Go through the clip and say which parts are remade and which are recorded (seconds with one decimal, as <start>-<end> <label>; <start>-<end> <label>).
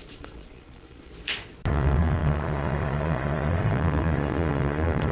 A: 0.0-1.1 remade; 1.1-1.7 recorded; 1.7-5.1 remade